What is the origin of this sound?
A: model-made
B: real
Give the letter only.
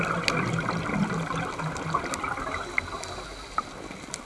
B